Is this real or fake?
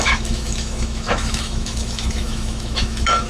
fake